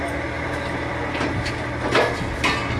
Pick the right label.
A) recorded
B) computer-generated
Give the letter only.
A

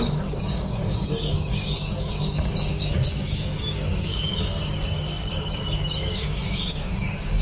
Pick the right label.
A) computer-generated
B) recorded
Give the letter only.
A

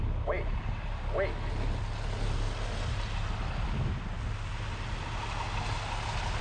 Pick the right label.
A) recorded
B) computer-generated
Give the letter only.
A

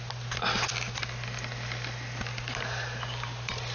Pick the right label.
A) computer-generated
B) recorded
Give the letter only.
B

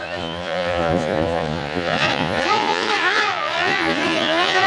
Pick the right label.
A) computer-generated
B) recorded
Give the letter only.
A